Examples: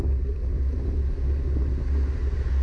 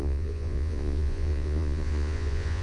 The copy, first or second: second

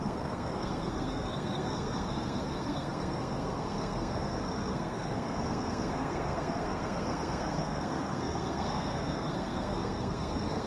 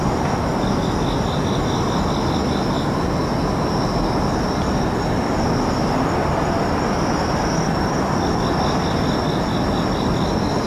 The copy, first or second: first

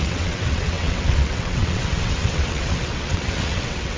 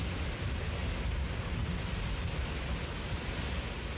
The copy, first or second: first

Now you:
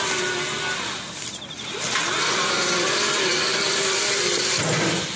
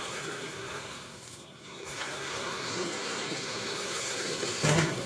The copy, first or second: second